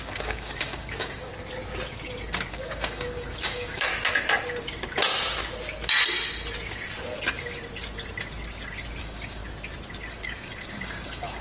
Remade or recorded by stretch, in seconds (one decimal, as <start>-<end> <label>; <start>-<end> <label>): 0.0-1.3 remade; 1.3-2.5 recorded; 2.5-3.9 remade; 3.9-9.0 recorded; 9.0-9.4 remade; 9.4-10.1 recorded; 10.1-11.4 remade